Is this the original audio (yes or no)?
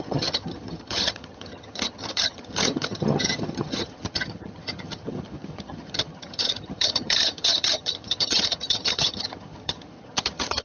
no